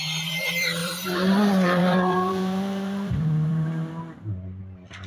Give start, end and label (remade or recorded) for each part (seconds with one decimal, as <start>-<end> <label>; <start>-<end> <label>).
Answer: 0.0-0.8 recorded; 0.8-3.9 remade; 3.9-5.1 recorded